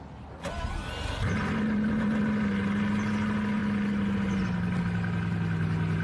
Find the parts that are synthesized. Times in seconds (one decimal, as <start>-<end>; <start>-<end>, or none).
none